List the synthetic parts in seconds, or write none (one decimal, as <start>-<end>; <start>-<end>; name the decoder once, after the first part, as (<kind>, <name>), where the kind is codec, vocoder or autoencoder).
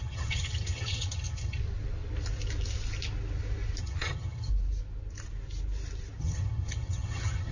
0.0-1.6 (vocoder, HiFi-GAN); 3.8-4.5; 6.2-7.5